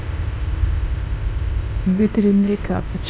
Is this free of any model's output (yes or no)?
no